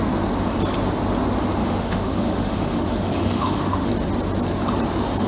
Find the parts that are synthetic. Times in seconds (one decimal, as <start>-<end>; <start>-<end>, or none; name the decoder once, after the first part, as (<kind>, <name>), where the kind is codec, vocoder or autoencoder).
1.6-3.9 (autoencoder, DAC-VAE)